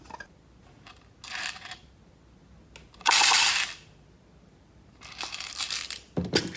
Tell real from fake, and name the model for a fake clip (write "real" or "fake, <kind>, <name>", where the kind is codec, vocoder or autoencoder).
real